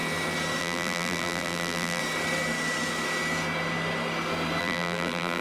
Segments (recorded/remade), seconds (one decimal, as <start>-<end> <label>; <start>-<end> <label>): 0.0-0.6 recorded; 0.6-2.0 remade; 2.0-4.6 recorded; 4.6-5.4 remade